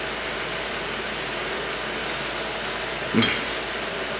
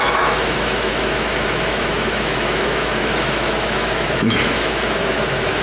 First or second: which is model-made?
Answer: second